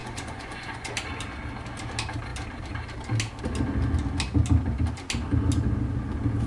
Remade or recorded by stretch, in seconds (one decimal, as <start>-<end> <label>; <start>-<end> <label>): 0.0-0.9 remade; 0.9-6.5 recorded